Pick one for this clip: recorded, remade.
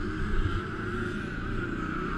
recorded